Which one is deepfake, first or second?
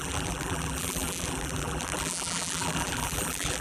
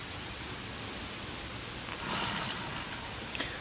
first